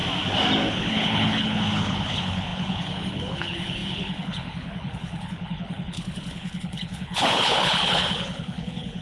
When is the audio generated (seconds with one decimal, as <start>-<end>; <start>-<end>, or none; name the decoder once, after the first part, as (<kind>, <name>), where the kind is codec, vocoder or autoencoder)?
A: 0.7-9.0 (codec, HILCodec)